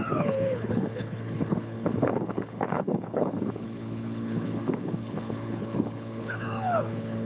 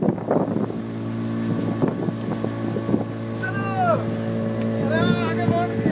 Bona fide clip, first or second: second